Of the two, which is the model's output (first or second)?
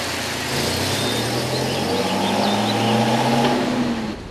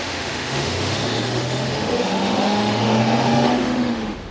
second